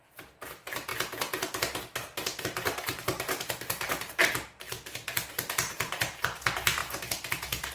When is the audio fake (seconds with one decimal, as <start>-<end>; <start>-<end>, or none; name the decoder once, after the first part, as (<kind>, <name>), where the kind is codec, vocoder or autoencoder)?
0.0-0.9 (vocoder, BigVGAN v2); 2.4-4.2; 5.3-7.7